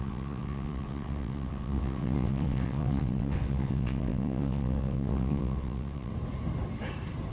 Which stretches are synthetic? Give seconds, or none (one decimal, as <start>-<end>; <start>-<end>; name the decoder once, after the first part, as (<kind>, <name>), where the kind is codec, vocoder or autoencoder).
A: 0.0-6.1 (vocoder, WaveNeXt)